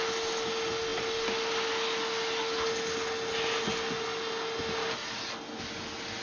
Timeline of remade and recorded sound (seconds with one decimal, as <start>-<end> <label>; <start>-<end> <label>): 0.0-6.2 recorded